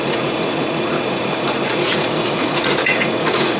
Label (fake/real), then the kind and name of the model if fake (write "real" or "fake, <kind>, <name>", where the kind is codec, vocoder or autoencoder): fake, vocoder, Vocos